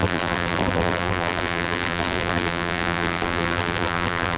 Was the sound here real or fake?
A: fake